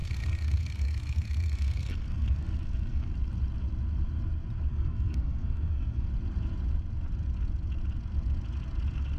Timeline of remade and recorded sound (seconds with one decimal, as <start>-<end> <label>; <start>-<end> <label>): 0.0-3.1 remade; 3.1-4.7 recorded; 4.7-6.1 remade; 6.1-9.2 recorded